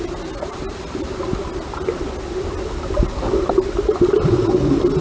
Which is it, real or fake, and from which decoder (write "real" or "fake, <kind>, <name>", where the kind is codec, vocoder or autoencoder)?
real